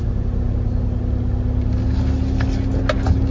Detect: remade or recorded recorded